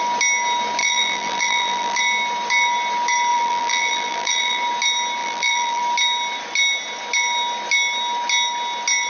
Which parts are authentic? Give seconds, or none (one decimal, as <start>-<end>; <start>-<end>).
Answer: 0.0-0.8; 2.0-3.3; 4.6-5.2; 5.8-9.1